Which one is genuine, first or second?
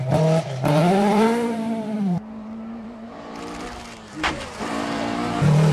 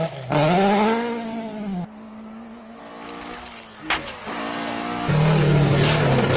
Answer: second